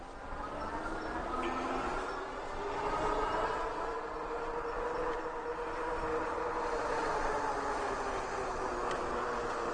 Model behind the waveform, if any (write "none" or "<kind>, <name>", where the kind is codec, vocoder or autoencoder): none